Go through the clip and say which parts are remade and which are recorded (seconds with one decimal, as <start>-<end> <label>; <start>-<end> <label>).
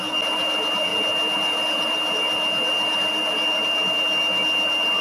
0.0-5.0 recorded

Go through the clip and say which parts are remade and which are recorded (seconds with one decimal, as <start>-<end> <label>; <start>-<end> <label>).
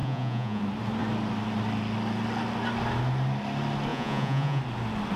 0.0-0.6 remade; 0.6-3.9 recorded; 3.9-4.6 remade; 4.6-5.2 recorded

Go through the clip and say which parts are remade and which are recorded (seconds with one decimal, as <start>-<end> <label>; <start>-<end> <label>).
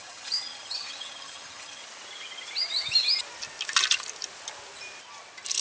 0.0-1.8 remade; 1.8-5.6 recorded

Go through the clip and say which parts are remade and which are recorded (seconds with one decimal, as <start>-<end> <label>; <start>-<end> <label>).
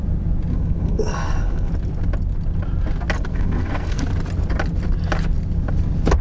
0.0-0.5 recorded; 0.5-1.7 remade; 1.7-3.3 recorded; 3.3-4.0 remade; 4.0-6.2 recorded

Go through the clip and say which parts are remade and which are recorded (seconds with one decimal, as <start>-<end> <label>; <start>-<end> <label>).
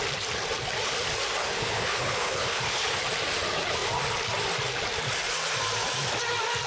0.0-1.4 recorded; 1.4-3.0 remade; 3.0-6.7 recorded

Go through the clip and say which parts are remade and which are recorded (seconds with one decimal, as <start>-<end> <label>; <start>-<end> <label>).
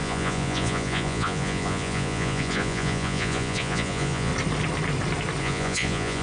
0.0-4.3 remade; 4.3-5.4 recorded; 5.4-6.2 remade